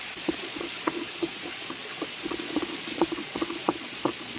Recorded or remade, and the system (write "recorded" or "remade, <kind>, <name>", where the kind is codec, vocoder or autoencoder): remade, vocoder, Vocos